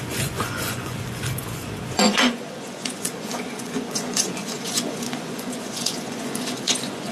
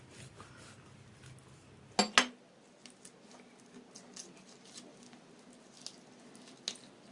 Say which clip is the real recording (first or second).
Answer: second